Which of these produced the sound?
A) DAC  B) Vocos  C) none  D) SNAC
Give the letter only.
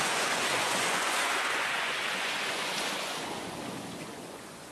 B